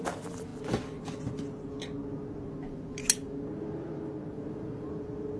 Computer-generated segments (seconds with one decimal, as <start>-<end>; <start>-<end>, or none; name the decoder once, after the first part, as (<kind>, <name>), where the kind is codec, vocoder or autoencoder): none